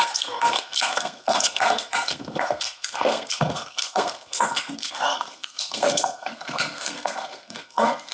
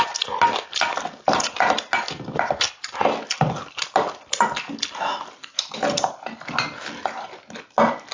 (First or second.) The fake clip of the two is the first